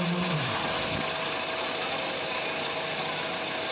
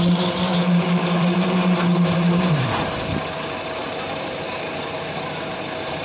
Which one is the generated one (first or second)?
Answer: second